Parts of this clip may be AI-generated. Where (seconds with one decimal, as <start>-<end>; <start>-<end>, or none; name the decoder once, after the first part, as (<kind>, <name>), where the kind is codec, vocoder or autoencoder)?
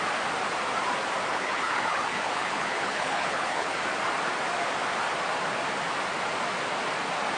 1.3-3.8 (codec, HILCodec)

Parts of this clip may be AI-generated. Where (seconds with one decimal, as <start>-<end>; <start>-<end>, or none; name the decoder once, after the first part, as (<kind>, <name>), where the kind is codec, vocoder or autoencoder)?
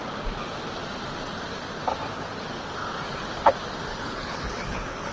3.9-5.1 (codec, HILCodec)